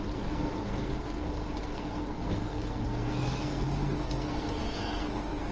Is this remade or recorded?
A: remade